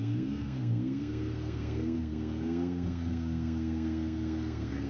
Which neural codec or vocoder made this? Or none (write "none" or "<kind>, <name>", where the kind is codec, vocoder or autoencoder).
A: codec, SNAC